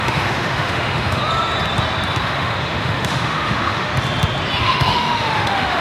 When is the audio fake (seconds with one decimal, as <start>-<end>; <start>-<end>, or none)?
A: 0.0-1.2; 2.2-3.9; 4.6-5.8